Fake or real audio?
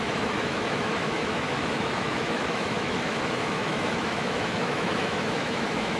fake